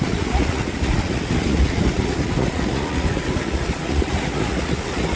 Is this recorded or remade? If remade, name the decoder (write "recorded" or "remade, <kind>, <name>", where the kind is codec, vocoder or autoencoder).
remade, vocoder, Vocos